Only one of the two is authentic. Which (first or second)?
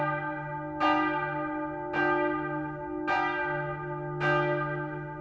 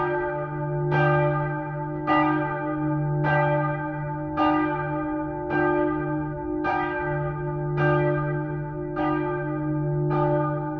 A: first